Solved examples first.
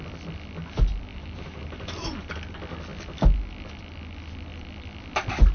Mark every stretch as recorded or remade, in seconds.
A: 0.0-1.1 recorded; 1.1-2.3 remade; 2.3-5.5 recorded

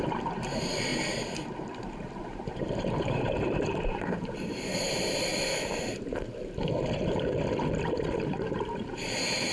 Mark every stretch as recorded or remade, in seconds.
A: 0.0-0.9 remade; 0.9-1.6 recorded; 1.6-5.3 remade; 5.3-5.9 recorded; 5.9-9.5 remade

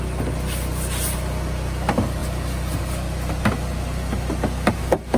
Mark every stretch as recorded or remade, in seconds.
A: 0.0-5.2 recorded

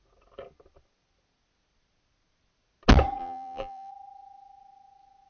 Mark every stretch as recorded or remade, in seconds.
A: 0.0-3.2 recorded; 3.2-3.9 remade; 3.9-5.3 recorded

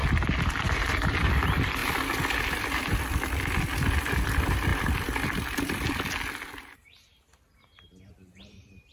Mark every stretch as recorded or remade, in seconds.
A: 0.0-0.7 recorded; 0.7-8.9 remade

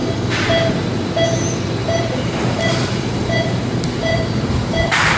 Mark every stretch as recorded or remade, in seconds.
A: 0.0-1.8 recorded; 1.8-5.2 remade